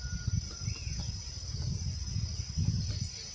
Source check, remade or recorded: recorded